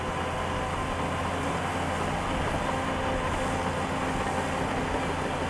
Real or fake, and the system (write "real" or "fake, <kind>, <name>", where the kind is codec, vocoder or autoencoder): real